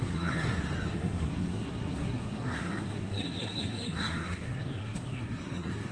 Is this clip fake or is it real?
fake